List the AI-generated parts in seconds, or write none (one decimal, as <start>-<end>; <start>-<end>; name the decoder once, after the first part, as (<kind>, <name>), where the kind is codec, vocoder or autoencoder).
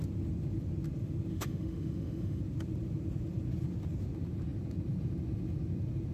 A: 1.3-2.4 (autoencoder, DAC-VAE)